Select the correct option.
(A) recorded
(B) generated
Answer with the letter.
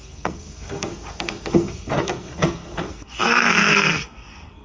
B